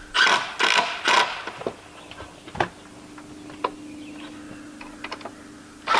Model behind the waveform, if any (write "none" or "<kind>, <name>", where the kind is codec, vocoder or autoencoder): none